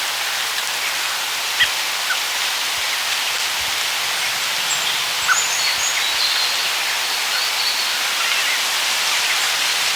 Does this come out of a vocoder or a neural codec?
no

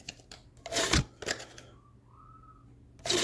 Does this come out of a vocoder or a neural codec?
no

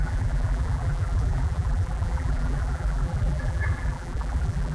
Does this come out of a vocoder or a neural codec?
yes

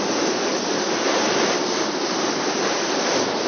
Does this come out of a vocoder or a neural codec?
no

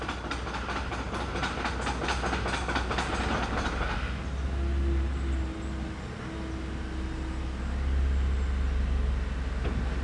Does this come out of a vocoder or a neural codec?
no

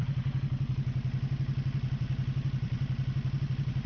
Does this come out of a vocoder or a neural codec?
no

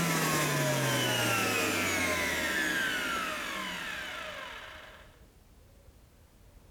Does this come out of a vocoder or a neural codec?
no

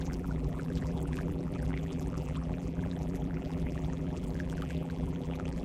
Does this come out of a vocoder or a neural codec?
yes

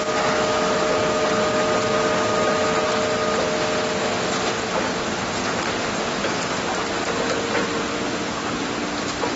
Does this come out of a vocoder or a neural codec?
no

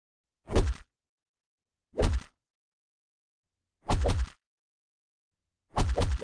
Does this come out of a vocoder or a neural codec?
no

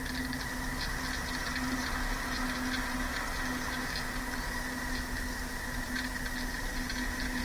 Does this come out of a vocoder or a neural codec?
no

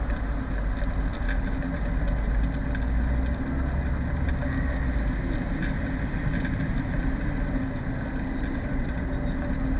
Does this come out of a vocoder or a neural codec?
no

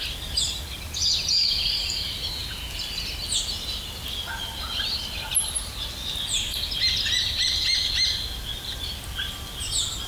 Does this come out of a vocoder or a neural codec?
no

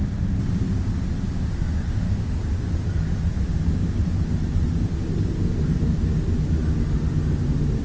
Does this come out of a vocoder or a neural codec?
no